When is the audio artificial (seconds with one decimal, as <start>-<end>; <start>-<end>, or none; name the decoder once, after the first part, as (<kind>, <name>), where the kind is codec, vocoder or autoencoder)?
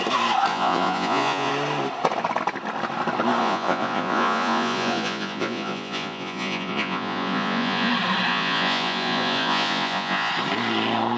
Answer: 0.5-1.5 (vocoder, Vocos); 3.4-7.9; 8.3-10.3